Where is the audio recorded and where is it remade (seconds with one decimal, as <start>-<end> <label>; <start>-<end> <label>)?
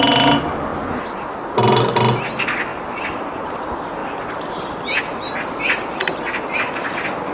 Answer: 0.0-2.7 recorded; 2.7-3.6 remade; 3.6-4.0 recorded; 4.0-5.4 remade; 5.4-7.3 recorded